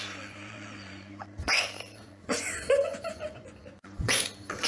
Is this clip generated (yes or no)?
yes